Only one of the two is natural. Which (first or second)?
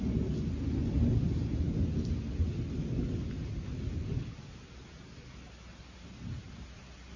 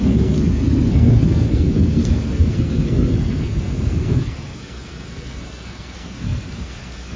first